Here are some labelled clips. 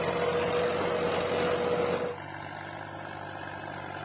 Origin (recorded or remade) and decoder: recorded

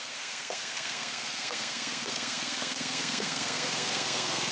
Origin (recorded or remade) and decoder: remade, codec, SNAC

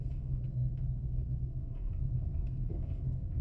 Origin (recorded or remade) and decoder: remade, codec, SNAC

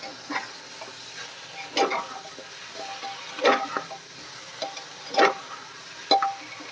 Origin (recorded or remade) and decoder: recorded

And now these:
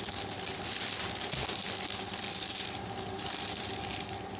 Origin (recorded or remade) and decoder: recorded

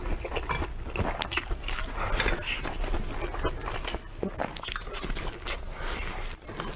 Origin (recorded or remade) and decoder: recorded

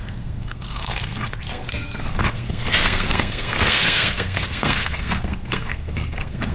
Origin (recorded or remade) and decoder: remade, codec, SNAC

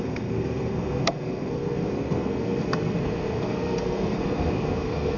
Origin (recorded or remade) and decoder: remade, codec, SNAC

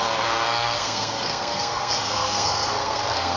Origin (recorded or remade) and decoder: remade, codec, SNAC